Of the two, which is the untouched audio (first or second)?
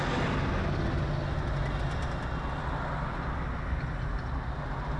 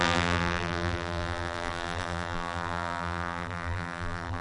first